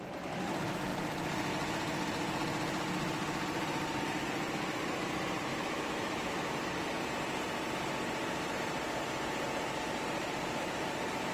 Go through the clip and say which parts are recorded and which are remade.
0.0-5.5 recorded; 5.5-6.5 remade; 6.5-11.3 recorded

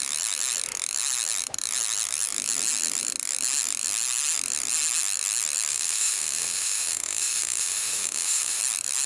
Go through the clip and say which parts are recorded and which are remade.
0.0-5.7 recorded; 5.7-8.6 remade; 8.6-9.1 recorded

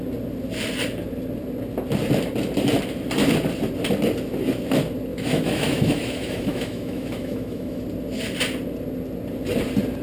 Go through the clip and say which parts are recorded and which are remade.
0.0-5.1 recorded; 5.1-7.8 remade; 7.8-10.0 recorded

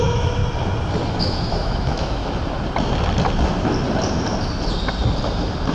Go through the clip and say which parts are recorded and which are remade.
0.0-0.4 remade; 0.4-1.1 recorded; 1.1-2.2 remade; 2.2-5.7 recorded